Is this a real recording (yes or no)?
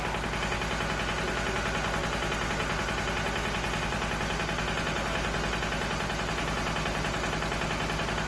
yes